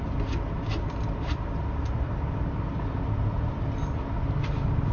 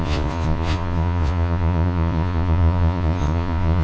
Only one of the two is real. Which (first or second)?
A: first